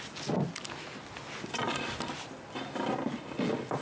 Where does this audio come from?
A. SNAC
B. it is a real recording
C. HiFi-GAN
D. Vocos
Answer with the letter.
B